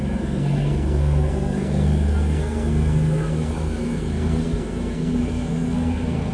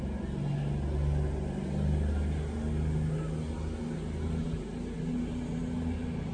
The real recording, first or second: second